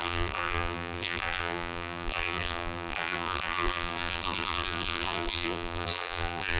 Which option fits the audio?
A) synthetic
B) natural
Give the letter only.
A